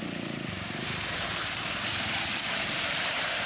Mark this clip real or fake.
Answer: fake